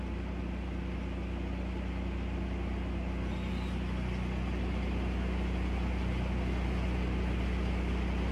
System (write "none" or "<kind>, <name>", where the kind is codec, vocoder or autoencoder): none